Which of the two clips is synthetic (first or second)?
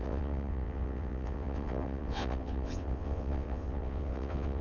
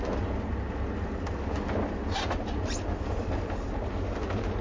first